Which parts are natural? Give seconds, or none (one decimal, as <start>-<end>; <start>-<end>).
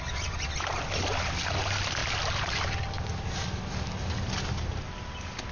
0.0-5.5